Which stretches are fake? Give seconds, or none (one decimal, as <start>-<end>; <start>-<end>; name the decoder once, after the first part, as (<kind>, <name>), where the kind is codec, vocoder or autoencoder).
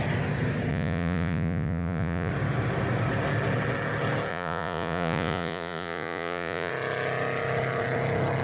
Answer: 0.7-2.3 (vocoder, Vocos); 4.3-6.7